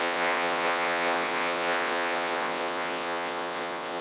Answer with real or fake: fake